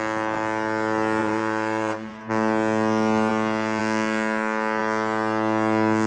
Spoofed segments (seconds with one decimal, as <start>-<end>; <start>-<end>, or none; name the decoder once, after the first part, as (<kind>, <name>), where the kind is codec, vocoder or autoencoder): 1.2-2.2 (vocoder, Vocos)